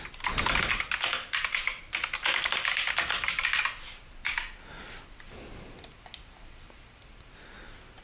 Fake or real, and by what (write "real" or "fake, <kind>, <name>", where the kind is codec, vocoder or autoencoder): real